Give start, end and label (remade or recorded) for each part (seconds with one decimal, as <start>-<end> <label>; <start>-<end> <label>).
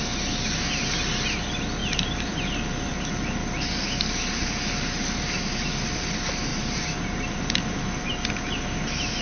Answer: 0.0-1.8 recorded; 1.8-2.4 remade; 2.4-6.5 recorded; 6.5-8.1 remade; 8.1-9.2 recorded